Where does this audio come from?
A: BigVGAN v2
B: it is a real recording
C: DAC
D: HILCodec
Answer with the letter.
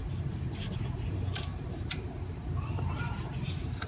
A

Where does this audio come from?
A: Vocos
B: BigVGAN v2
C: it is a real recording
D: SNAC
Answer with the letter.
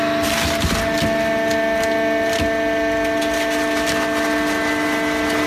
C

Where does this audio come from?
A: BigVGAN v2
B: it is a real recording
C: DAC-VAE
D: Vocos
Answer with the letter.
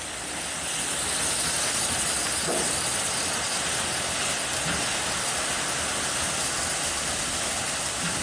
A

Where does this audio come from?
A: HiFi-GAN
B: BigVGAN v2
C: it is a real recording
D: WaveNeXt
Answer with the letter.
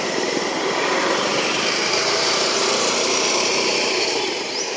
B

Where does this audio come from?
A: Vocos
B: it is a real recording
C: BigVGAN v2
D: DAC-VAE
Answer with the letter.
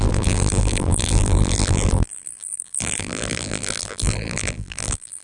C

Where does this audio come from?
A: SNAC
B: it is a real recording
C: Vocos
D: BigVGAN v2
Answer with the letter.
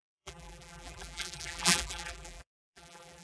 D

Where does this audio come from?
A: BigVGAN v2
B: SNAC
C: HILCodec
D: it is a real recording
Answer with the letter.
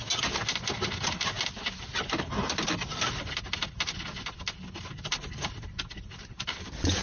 D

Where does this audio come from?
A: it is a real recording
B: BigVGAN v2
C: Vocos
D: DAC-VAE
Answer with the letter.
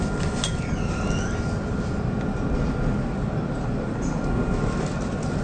A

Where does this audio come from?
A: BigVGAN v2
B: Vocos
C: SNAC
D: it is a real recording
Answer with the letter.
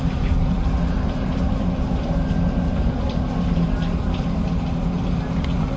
A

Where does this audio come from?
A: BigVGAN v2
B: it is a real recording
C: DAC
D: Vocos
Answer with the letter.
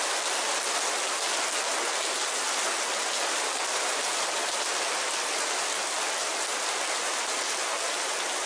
B